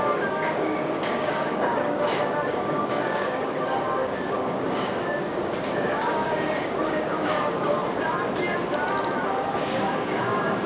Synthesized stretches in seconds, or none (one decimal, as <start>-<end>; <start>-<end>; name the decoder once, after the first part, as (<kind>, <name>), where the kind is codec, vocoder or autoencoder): 0.0-7.8 (codec, DAC); 9.2-10.7